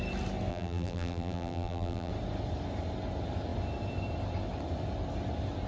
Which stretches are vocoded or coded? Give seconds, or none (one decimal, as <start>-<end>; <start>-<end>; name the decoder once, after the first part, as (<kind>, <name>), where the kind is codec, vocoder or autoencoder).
0.5-2.1 (vocoder, BigVGAN v2)